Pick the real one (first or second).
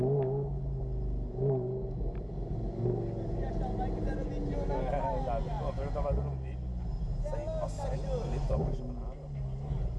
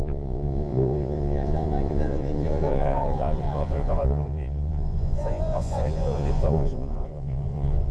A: first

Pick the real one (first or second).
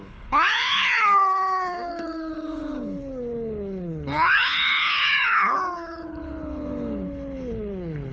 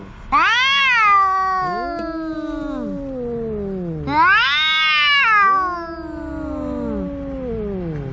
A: second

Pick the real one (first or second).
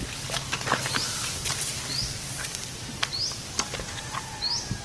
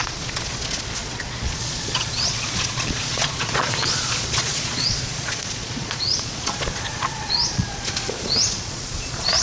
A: first